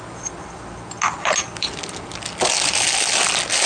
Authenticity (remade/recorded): recorded